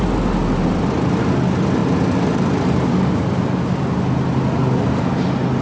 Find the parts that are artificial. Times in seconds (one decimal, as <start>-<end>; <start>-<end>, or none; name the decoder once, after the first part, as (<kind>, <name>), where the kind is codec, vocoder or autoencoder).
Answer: none